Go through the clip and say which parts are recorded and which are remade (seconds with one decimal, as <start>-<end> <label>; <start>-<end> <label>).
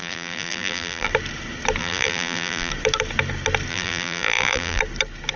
0.0-1.1 remade; 1.1-1.8 recorded; 1.8-2.7 remade; 2.7-3.7 recorded; 3.7-4.8 remade; 4.8-5.4 recorded